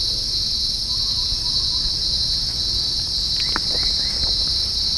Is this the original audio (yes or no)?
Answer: yes